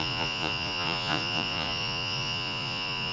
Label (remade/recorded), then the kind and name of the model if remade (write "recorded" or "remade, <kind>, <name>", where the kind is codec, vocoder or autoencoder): remade, vocoder, Vocos